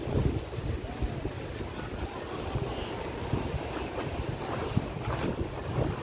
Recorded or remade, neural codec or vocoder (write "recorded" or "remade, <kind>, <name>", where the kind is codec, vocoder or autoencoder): recorded